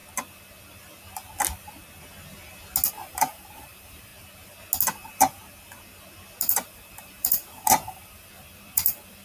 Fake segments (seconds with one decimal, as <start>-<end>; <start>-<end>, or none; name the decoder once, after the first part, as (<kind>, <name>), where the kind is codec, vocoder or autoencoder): 2.9-4.1 (vocoder, BigVGAN v2); 6.4-9.2